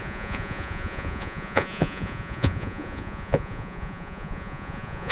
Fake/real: fake